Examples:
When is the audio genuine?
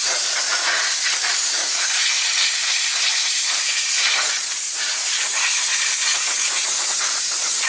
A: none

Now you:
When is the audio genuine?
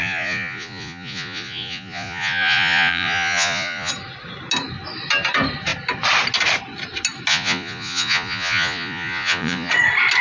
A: 3.9-7.3; 9.7-10.2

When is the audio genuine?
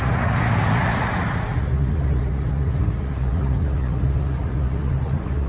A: none